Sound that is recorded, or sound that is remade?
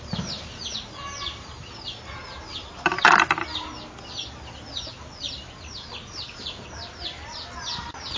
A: recorded